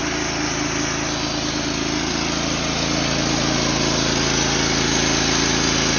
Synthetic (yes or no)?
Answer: no